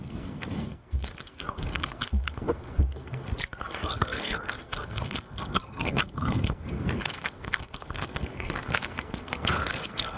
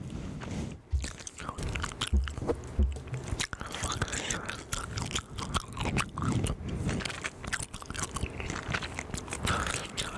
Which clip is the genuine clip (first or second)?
second